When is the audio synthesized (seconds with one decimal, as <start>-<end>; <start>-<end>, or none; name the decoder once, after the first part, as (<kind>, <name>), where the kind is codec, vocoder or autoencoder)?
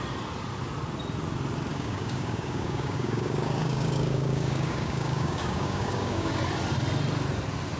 1.7-6.4 (codec, DAC)